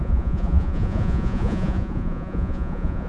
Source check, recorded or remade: remade